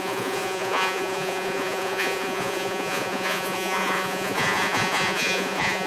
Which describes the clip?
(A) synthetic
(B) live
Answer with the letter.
A